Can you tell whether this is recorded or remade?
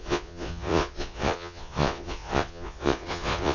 remade